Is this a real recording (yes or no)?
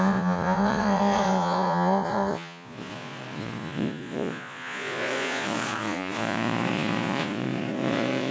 no